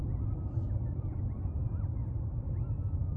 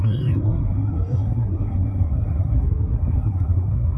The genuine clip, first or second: first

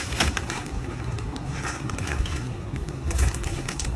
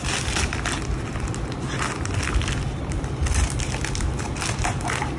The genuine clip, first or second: second